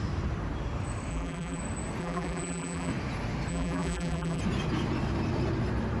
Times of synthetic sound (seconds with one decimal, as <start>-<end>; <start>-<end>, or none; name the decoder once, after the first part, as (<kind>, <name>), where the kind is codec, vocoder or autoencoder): 1.1-1.6 (vocoder, BigVGAN v2); 2.0-2.9; 3.5-4.4